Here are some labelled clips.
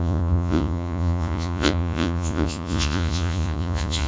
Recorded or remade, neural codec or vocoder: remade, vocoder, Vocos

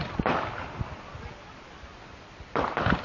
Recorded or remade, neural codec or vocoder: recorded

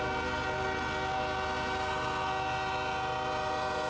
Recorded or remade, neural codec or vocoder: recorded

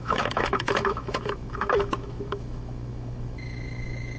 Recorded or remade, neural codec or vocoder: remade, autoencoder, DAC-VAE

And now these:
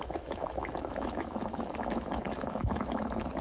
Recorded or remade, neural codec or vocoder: remade, autoencoder, DAC-VAE